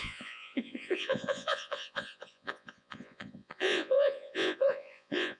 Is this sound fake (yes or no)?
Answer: yes